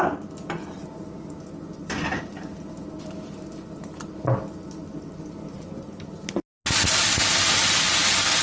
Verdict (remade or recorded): recorded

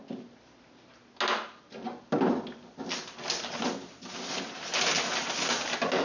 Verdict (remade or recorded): recorded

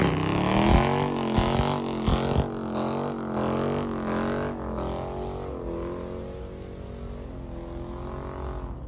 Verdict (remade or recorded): recorded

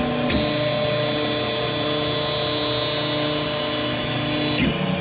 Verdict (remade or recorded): recorded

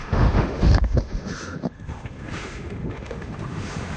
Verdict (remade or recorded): remade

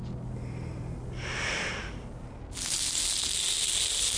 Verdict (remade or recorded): recorded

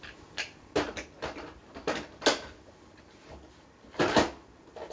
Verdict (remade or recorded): recorded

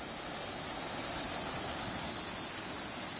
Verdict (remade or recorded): recorded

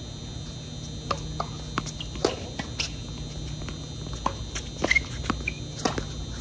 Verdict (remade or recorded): recorded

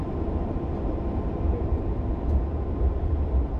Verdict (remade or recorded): recorded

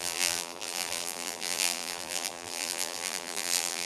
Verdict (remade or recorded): remade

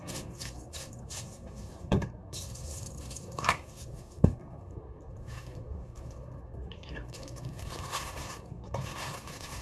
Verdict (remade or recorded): remade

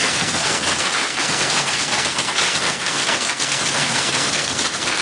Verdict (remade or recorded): remade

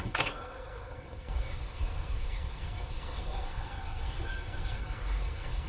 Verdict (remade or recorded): remade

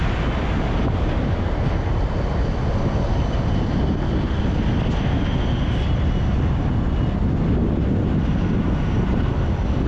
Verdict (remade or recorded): recorded